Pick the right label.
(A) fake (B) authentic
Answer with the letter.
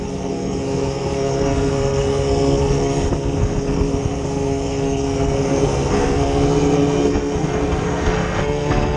A